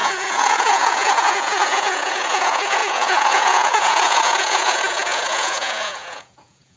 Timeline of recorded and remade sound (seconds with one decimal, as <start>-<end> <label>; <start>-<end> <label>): 0.0-6.8 remade